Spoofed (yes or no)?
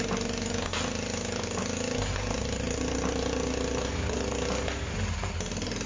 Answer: no